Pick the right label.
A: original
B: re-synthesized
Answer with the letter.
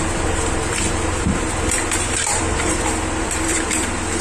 B